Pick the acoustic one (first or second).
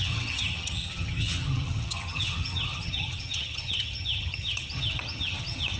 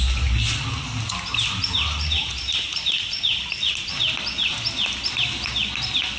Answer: second